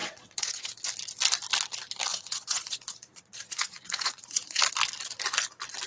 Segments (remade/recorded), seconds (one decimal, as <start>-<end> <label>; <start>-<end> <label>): 0.0-0.7 remade; 0.7-2.1 recorded; 2.1-4.6 remade; 4.6-5.9 recorded